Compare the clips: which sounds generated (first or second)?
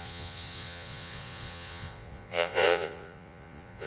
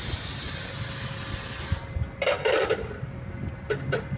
first